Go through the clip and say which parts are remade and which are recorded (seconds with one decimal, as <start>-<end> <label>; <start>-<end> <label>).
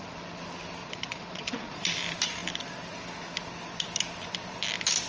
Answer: 0.0-0.8 recorded; 0.8-1.8 remade; 1.8-5.1 recorded